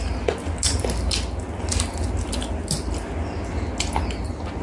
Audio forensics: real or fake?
real